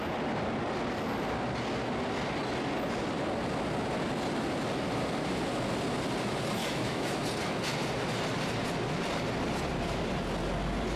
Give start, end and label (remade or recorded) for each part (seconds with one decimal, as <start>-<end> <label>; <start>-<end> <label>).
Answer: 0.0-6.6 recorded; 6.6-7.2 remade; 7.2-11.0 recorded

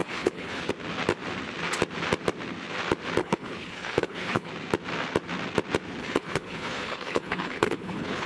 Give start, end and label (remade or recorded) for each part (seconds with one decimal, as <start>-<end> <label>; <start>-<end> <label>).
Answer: 0.0-0.7 remade; 0.7-3.2 recorded; 3.2-4.5 remade; 4.5-6.0 recorded; 6.0-8.3 remade

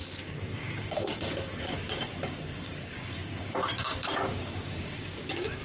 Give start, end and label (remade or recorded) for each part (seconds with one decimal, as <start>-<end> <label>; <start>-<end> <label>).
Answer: 0.0-5.6 remade

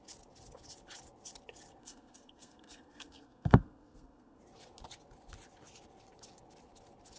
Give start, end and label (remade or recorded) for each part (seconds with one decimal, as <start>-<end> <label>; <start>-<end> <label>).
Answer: 0.0-1.8 recorded; 1.8-4.4 remade; 4.4-7.2 recorded

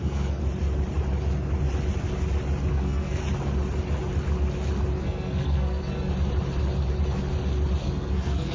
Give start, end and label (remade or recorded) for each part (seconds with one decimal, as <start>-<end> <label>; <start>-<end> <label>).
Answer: 0.0-0.4 remade; 0.4-2.7 recorded; 2.7-3.2 remade; 3.2-5.0 recorded; 5.0-6.1 remade; 6.1-7.8 recorded; 7.8-8.5 remade